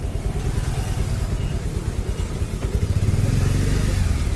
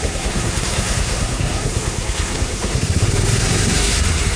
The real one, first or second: first